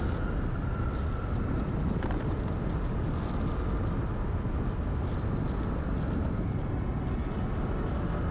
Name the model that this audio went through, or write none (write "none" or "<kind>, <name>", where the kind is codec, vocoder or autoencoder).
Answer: none